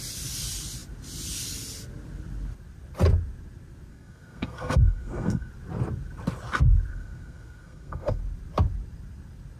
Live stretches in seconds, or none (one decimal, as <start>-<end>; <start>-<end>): 0.0-3.9; 5.5-6.9; 8.2-9.6